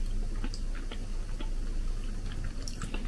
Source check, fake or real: real